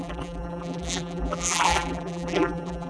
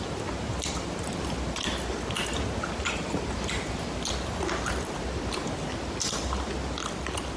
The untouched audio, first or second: second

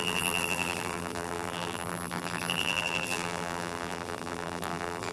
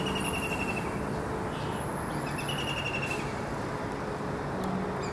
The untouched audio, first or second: second